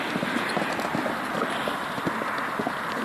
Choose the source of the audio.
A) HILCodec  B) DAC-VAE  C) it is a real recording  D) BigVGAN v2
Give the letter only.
C